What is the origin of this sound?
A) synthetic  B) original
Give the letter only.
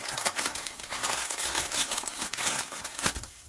A